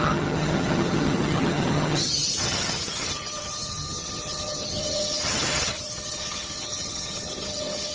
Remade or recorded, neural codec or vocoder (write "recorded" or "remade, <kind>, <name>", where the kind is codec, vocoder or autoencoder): remade, vocoder, HiFi-GAN